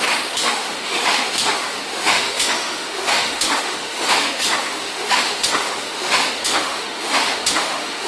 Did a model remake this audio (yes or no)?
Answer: yes